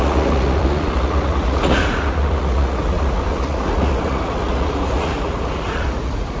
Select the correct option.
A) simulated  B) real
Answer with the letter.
A